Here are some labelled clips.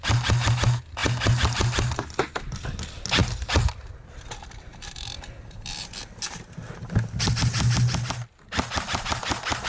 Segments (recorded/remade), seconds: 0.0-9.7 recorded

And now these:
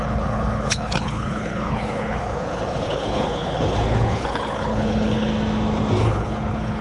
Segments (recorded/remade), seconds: 0.0-5.3 remade; 5.3-6.0 recorded; 6.0-6.8 remade

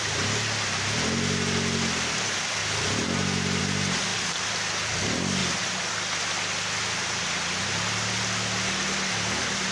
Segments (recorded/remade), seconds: 0.0-4.1 recorded; 4.1-4.7 remade; 4.7-9.7 recorded

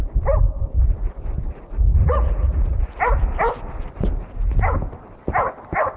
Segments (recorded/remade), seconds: 0.0-2.0 recorded; 2.0-2.8 remade; 2.8-6.0 recorded

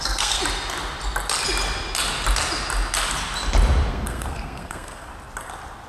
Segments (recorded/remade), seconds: 0.0-0.4 remade; 0.4-3.9 recorded; 3.9-5.1 remade; 5.1-5.9 recorded